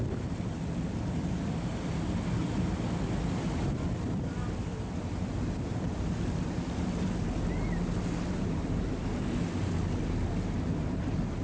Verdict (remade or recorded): remade